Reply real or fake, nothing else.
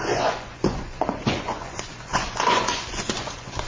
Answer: fake